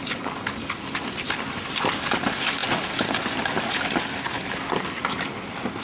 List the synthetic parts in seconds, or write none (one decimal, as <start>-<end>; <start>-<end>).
none

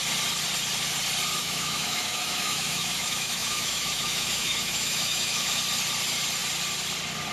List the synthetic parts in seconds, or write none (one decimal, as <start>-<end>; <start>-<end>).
1.4-5.6

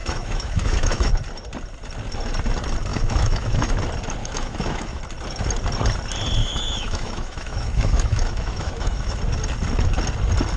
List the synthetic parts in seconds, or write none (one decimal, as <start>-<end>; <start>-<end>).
0.0-1.1; 2.9-3.8; 4.2-5.0; 6.4-9.2

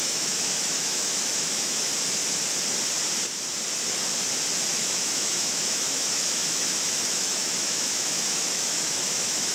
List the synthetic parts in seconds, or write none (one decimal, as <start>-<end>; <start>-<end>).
0.0-1.9; 4.7-9.5

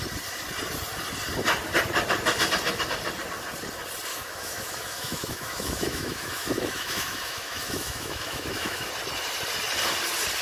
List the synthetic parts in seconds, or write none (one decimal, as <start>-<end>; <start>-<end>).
4.1-8.9

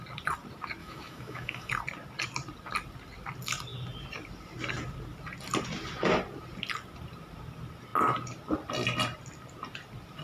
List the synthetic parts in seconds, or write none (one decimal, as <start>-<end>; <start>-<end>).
0.8-1.7

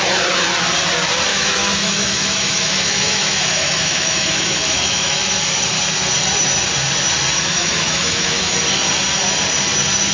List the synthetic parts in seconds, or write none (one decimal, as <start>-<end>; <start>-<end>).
1.3-5.3; 7.6-8.5